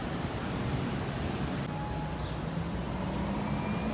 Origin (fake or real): real